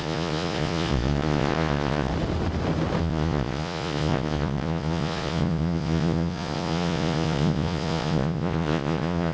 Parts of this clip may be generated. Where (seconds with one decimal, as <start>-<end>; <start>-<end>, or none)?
0.0-2.1; 3.0-9.3